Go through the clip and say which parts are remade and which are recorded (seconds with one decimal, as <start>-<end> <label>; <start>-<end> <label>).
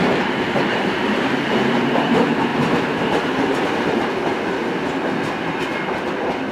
0.0-4.2 remade; 4.2-6.5 recorded